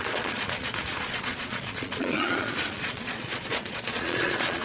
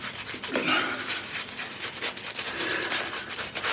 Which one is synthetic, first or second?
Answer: first